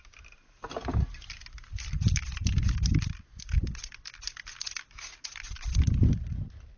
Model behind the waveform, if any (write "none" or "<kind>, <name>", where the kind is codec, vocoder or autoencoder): none